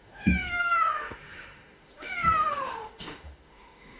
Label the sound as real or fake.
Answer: fake